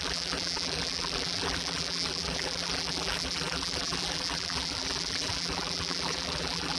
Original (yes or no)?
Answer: no